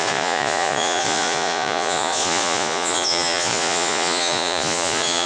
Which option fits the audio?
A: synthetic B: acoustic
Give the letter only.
A